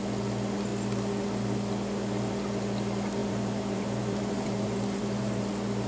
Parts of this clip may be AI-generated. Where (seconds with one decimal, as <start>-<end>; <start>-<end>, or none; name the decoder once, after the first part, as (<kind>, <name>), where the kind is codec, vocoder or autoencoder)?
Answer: 3.2-5.4 (vocoder, BigVGAN v2)

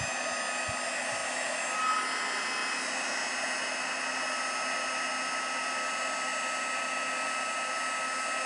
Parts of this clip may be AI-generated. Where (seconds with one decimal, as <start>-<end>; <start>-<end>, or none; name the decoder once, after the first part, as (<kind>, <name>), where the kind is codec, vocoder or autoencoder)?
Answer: none

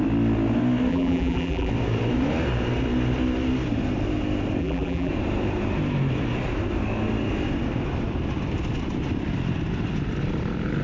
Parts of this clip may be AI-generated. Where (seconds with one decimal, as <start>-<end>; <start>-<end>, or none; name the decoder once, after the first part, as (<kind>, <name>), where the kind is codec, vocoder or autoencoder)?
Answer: 0.9-1.7 (vocoder, BigVGAN v2); 4.6-5.1

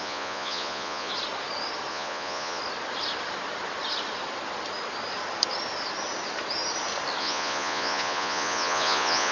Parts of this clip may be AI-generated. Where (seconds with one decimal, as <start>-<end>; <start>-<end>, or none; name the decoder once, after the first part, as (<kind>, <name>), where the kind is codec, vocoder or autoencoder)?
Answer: 0.0-1.1 (vocoder, Vocos); 1.9-2.6; 7.2-9.3

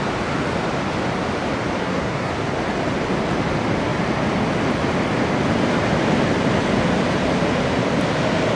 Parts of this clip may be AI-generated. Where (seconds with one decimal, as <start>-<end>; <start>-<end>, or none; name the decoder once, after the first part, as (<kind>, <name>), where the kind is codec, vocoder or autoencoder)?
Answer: 1.8-2.3 (codec, SNAC)

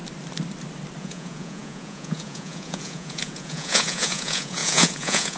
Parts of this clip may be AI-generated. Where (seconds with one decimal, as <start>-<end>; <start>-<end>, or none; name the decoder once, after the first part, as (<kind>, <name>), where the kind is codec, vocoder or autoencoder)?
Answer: 1.0-5.4 (vocoder, Vocos)